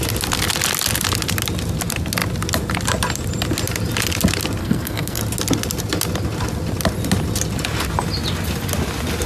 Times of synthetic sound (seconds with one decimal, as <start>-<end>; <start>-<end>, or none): 4.6-5.2

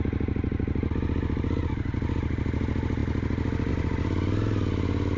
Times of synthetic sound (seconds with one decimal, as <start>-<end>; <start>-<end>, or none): none

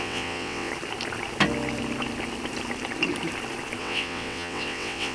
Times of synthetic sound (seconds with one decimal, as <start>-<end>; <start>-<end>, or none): 0.0-0.7; 3.8-5.1

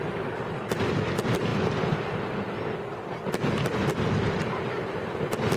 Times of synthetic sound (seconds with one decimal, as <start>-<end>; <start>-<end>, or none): none